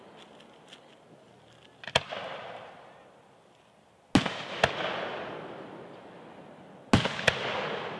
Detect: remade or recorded recorded